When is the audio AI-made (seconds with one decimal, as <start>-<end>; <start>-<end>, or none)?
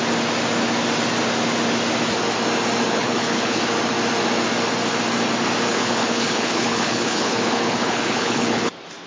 2.9-3.6; 5.7-8.7